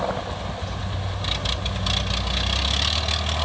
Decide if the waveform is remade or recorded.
recorded